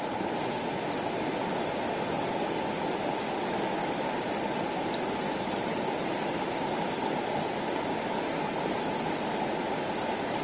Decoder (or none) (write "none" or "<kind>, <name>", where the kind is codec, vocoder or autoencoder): none